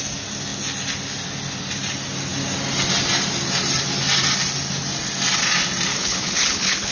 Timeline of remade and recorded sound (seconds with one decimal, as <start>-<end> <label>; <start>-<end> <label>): 0.0-5.9 recorded; 5.9-6.9 remade

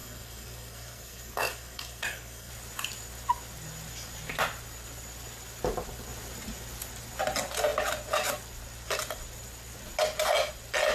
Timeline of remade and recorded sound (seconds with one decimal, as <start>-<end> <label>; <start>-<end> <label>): 0.0-2.5 remade; 2.5-10.9 recorded